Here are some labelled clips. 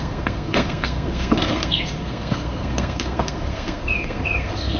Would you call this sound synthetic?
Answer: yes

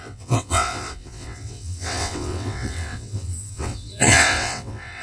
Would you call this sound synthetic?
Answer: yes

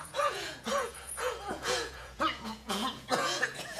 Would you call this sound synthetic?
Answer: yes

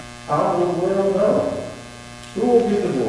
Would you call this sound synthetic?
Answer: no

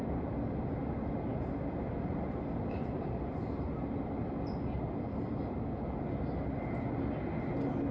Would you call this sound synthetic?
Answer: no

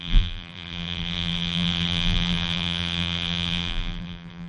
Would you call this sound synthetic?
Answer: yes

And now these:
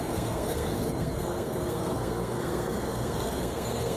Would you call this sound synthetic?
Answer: yes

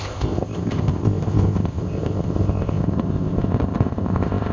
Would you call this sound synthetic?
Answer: yes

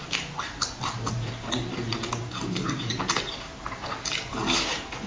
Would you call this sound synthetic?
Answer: no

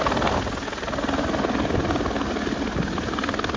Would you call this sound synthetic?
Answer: no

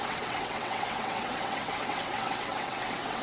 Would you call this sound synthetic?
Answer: yes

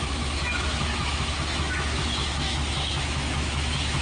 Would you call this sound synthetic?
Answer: yes